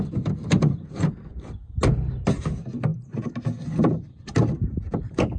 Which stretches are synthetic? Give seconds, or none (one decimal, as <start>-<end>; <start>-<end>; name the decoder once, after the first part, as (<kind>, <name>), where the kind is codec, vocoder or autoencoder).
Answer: none